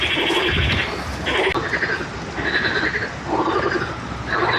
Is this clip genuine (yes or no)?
yes